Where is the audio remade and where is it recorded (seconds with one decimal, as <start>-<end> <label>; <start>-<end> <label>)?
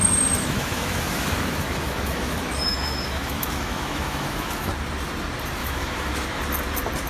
0.0-0.4 recorded; 0.4-4.7 remade; 4.7-5.6 recorded; 5.6-6.1 remade; 6.1-7.1 recorded